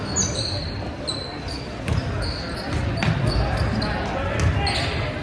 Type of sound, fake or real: real